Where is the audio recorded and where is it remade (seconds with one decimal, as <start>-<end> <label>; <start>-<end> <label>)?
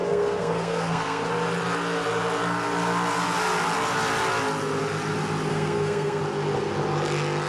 0.0-1.3 remade; 1.3-5.5 recorded; 5.5-6.2 remade; 6.2-7.5 recorded